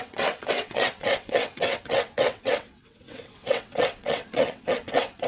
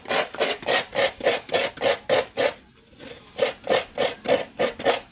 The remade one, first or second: first